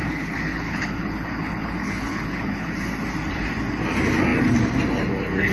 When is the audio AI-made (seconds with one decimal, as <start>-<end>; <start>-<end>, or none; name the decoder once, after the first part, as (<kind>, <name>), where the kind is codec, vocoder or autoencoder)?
0.0-2.7 (codec, HILCodec)